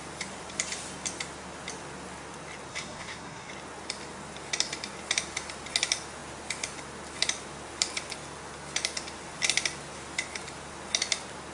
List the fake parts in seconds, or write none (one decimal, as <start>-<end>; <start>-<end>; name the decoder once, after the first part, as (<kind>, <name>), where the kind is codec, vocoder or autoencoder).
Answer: 2.7-3.5 (codec, SNAC)